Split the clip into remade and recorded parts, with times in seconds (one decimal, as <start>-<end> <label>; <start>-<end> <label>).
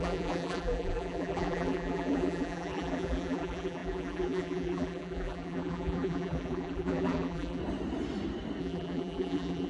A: 0.0-7.6 remade; 7.6-8.6 recorded; 8.6-9.7 remade